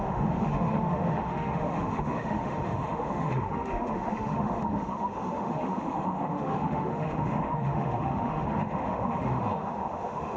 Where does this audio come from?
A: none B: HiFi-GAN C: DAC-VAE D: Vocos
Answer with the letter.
C